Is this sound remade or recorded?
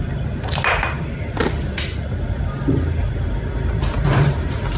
recorded